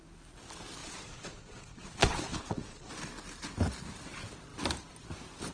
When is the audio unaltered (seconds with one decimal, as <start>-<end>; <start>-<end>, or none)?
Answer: 0.0-0.8; 2.9-5.5